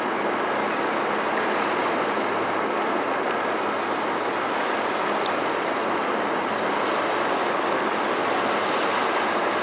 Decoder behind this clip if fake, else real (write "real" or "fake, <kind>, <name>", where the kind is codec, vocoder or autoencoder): real